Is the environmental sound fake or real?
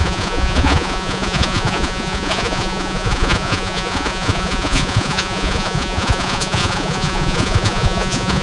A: fake